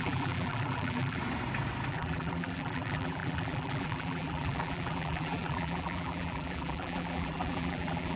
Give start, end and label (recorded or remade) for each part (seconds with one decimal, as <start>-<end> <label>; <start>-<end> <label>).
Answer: 0.0-1.2 remade; 1.2-1.9 recorded; 1.9-8.2 remade